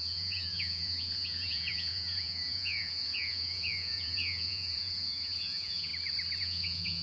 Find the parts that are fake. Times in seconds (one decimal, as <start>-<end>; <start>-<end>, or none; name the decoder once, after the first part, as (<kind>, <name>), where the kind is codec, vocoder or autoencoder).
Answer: 0.0-5.9 (vocoder, Vocos); 6.4-7.0